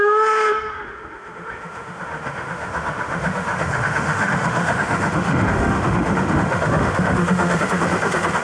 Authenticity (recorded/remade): remade